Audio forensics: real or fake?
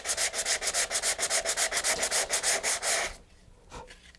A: real